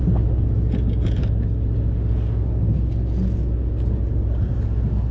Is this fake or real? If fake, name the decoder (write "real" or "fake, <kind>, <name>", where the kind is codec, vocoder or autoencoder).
real